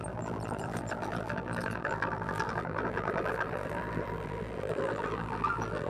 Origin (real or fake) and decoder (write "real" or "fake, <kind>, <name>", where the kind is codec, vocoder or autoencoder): fake, vocoder, BigVGAN v2